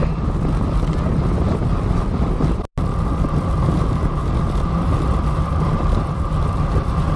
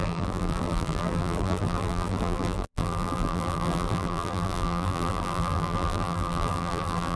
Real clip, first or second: first